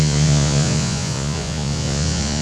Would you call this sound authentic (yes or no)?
no